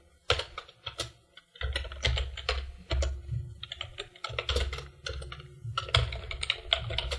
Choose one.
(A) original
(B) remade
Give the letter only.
A